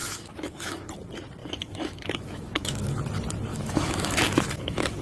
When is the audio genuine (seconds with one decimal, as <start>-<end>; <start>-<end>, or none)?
0.9-1.4; 3.0-3.5